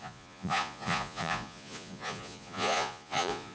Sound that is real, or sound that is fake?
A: fake